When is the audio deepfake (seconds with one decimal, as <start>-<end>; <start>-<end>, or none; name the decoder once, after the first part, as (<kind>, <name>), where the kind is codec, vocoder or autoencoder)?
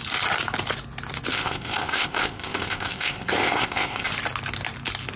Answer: 1.3-4.1 (codec, ZipCodec)